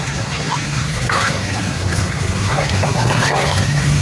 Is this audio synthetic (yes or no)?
yes